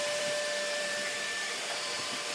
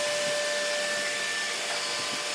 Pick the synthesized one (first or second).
first